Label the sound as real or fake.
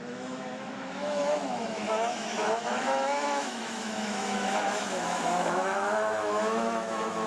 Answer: fake